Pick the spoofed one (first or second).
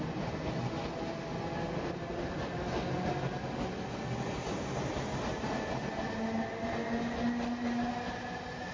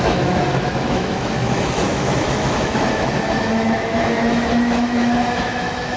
second